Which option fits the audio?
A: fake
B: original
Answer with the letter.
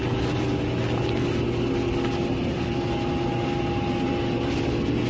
B